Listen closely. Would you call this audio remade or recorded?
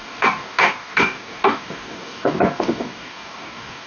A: remade